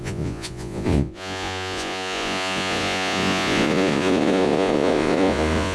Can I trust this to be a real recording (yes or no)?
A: no